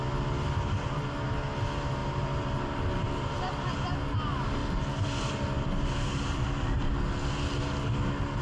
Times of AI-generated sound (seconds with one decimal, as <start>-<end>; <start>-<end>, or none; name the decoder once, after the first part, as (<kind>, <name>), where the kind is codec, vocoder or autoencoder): 2.0-3.7 (vocoder, BigVGAN v2); 4.6-6.9

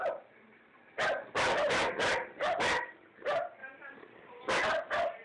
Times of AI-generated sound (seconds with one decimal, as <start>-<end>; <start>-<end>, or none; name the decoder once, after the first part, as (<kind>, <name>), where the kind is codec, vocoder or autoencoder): 3.6-4.5 (vocoder, BigVGAN v2)

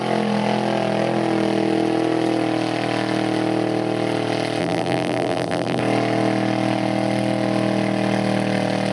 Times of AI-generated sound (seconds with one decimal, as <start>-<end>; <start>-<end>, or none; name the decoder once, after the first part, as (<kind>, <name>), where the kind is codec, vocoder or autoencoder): 4.6-5.8 (vocoder, BigVGAN v2)

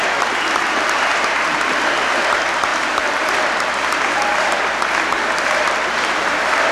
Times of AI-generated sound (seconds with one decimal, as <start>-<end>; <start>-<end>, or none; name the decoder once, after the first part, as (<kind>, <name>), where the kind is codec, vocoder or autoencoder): 0.0-6.7 (vocoder, BigVGAN v2)